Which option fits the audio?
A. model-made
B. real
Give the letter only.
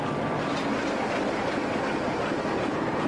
B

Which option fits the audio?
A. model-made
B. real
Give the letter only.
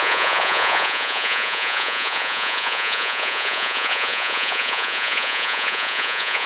A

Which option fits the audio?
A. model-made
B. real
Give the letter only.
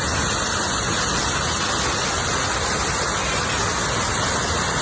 B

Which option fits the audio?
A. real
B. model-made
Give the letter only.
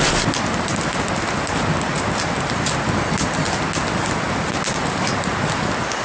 A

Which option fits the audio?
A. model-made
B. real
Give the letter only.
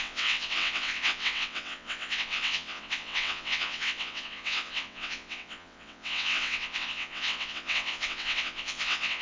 A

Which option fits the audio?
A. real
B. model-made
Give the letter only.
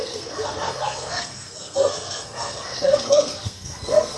B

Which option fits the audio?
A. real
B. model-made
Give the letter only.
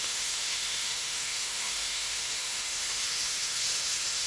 B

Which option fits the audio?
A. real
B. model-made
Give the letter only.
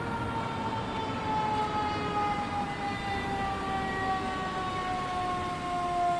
A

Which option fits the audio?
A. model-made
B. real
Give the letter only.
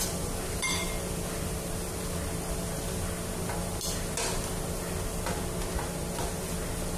B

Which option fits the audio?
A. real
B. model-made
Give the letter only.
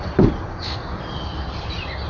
A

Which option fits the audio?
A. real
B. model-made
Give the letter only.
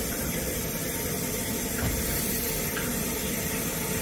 B